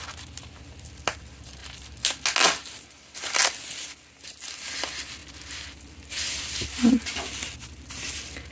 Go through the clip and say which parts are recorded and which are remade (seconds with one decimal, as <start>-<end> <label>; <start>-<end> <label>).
0.0-8.5 recorded